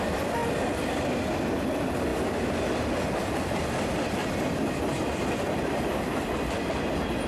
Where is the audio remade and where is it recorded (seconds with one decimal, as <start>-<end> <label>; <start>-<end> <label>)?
0.0-7.3 recorded